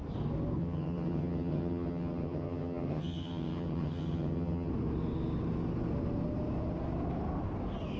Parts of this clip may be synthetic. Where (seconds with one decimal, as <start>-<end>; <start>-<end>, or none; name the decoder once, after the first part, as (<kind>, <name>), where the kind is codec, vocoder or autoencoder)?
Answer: 0.6-4.7 (vocoder, HiFi-GAN)